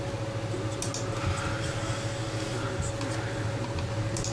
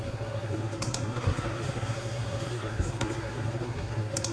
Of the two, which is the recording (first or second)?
first